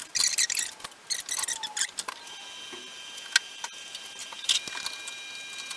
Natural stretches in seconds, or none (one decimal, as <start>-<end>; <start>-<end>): 0.0-5.8

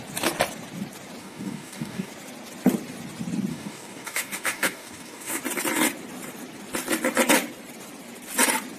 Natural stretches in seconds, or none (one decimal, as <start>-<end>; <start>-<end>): 0.0-1.2; 2.1-3.5; 5.4-8.8

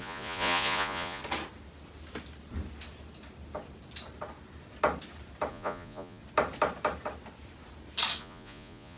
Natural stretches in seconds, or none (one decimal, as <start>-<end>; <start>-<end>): 1.2-5.5; 6.2-8.2

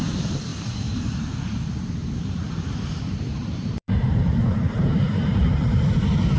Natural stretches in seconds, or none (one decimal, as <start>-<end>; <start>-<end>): 0.0-0.5; 1.3-2.0; 5.8-6.4

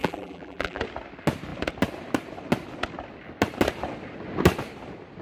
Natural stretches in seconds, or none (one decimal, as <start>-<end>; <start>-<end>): 0.8-5.2

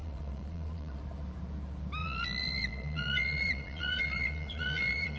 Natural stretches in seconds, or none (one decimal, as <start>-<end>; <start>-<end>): 1.0-2.0

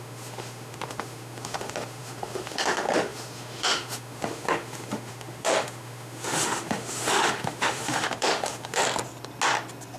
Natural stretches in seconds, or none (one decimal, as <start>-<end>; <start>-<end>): 8.8-10.0